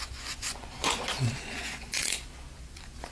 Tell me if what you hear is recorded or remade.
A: remade